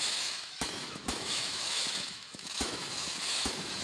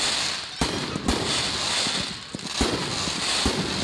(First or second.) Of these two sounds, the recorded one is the second